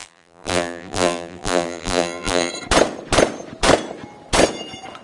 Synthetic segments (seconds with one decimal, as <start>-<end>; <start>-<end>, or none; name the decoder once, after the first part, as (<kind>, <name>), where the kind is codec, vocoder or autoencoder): 0.0-2.5 (vocoder, BigVGAN v2)